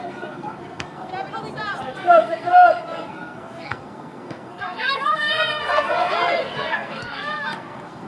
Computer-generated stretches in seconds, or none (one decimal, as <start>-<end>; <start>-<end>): 0.0-1.1; 1.8-8.1